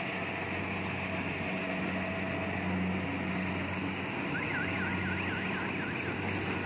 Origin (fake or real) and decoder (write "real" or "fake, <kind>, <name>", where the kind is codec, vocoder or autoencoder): real